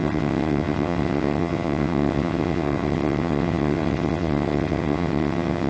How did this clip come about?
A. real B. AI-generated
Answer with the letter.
B